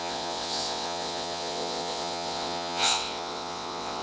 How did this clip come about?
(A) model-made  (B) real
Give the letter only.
A